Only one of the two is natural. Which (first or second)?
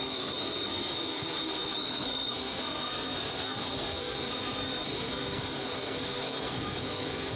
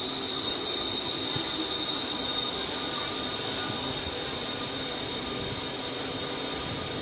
second